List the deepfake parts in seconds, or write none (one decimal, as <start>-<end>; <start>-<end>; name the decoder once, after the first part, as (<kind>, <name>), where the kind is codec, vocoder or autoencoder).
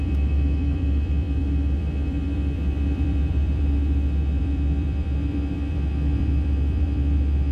0.0-7.5 (vocoder, BigVGAN v2)